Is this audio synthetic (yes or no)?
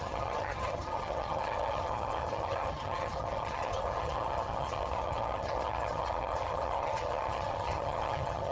yes